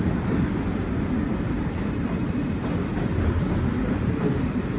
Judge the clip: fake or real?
real